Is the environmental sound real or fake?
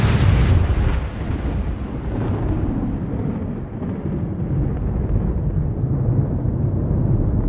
real